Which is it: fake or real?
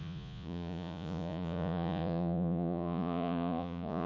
fake